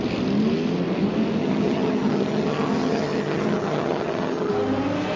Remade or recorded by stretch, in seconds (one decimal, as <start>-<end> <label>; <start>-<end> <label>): 0.0-1.4 recorded; 1.4-4.5 remade; 4.5-5.2 recorded